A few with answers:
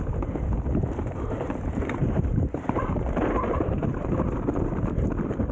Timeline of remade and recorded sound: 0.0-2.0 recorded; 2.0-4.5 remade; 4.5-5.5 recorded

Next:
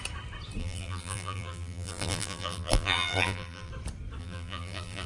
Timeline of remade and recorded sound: 0.0-0.6 recorded; 0.6-3.7 remade; 3.7-4.2 recorded; 4.2-5.1 remade

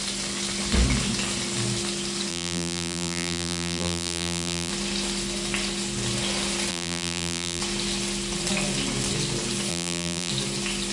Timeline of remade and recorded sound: 0.0-2.3 recorded; 2.3-4.7 remade; 4.7-6.7 recorded; 6.7-7.6 remade; 7.6-9.7 recorded; 9.7-10.3 remade; 10.3-10.9 recorded

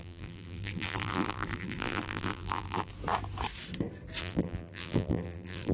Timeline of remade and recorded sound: 0.0-2.9 remade; 2.9-4.2 recorded; 4.2-5.7 remade

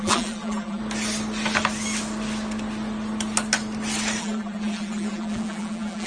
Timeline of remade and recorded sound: 0.0-0.8 remade; 0.8-4.2 recorded; 4.2-6.1 remade

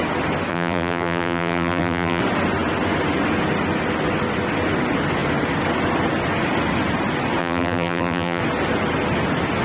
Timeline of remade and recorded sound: 0.0-0.5 recorded; 0.5-2.2 remade; 2.2-7.4 recorded; 7.4-8.4 remade; 8.4-9.6 recorded

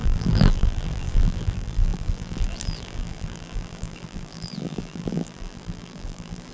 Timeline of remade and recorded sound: 0.0-6.5 remade

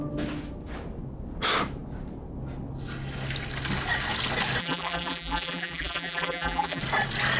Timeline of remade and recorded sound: 0.0-4.6 recorded; 4.6-6.8 remade; 6.8-7.4 recorded